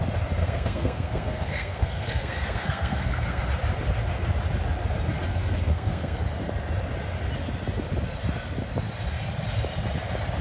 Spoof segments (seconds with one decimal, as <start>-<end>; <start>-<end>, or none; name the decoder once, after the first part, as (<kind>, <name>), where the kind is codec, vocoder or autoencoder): 0.4-3.4 (codec, SNAC); 5.3-6.2